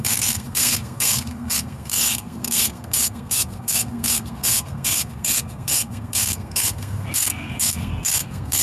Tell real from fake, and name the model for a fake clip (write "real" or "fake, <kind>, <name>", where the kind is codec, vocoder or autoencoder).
fake, codec, SNAC